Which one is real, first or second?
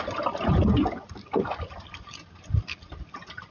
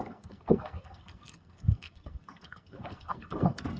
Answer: first